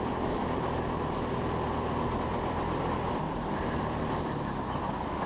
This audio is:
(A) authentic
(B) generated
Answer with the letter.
A